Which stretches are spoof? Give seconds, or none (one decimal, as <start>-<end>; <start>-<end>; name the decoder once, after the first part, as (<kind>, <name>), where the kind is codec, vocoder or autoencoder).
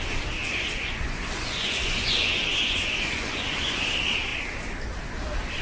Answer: 0.4-3.8 (vocoder, Vocos)